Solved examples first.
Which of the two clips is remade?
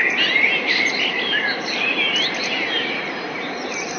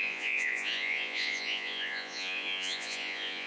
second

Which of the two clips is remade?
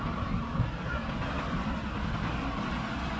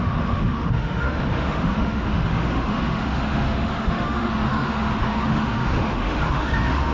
second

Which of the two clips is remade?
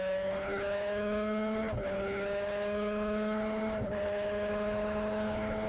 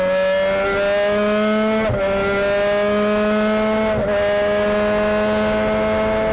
first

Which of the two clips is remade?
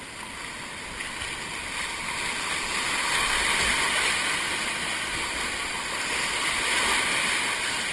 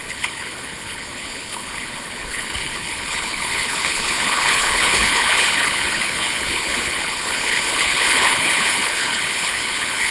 second